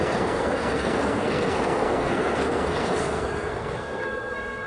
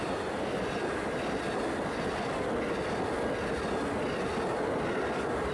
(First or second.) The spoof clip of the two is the first